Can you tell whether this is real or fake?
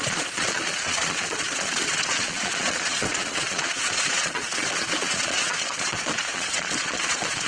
fake